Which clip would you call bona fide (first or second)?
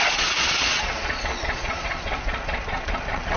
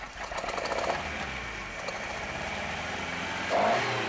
second